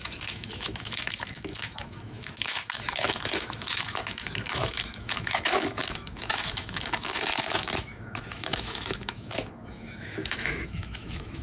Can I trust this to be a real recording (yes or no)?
no